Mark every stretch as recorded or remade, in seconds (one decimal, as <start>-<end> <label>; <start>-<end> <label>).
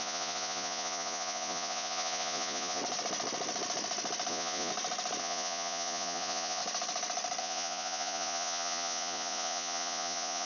0.0-2.8 remade; 2.8-4.3 recorded; 4.3-4.7 remade; 4.7-5.2 recorded; 5.2-6.6 remade; 6.6-7.4 recorded; 7.4-10.5 remade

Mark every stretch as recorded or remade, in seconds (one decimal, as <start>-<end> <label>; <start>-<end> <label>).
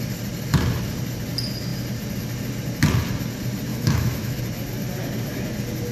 0.0-3.7 recorded; 3.7-4.4 remade; 4.4-5.9 recorded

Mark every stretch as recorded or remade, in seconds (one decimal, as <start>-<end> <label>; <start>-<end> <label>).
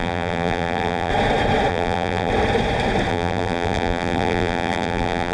0.0-1.1 remade; 1.1-1.7 recorded; 1.7-2.3 remade; 2.3-3.1 recorded; 3.1-5.3 remade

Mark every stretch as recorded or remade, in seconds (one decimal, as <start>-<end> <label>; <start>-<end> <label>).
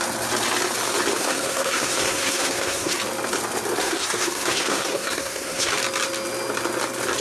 0.0-1.2 recorded; 1.2-3.0 remade; 3.0-3.8 recorded; 3.8-5.7 remade; 5.7-7.2 recorded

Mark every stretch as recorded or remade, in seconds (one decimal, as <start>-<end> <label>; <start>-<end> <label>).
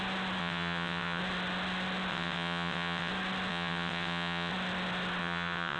0.0-0.4 recorded; 0.4-1.2 remade; 1.2-2.1 recorded; 2.1-3.1 remade; 3.1-3.5 recorded; 3.5-4.5 remade; 4.5-5.2 recorded; 5.2-5.8 remade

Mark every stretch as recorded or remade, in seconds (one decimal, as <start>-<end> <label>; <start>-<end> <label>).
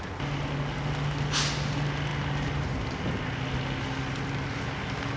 0.0-5.2 recorded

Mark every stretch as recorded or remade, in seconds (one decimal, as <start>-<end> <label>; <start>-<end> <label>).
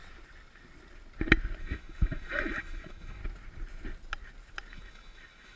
0.0-1.6 recorded; 1.6-3.2 remade; 3.2-4.7 recorded; 4.7-5.6 remade